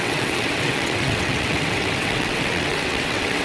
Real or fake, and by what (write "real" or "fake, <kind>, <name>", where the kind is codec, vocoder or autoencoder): fake, vocoder, WaveNeXt